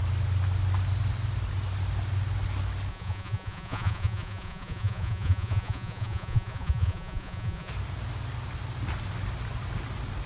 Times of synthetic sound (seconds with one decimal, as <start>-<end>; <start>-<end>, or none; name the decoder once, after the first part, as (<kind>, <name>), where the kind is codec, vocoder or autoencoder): 2.9-7.7 (vocoder, Vocos)